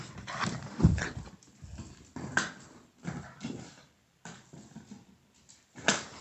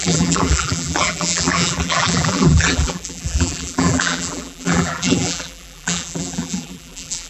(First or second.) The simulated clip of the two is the second